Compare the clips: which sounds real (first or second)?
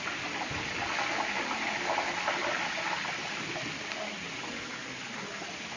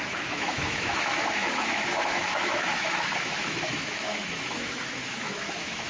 first